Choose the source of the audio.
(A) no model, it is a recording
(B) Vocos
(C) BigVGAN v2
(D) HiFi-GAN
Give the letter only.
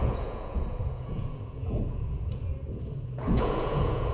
B